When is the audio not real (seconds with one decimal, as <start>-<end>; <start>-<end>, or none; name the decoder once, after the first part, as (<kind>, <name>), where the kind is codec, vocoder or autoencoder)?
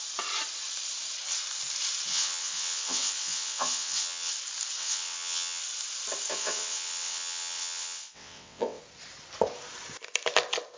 2.1-4.3 (vocoder, WaveNeXt); 4.8-5.6; 6.3-8.8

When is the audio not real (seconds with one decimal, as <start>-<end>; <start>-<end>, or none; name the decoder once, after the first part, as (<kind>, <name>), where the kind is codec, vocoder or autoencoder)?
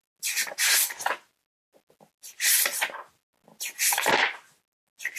none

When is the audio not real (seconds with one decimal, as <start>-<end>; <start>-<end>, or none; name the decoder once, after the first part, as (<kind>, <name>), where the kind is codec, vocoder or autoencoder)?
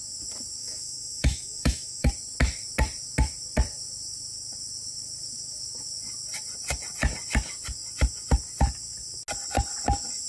0.6-2.1 (autoencoder, DAC-VAE)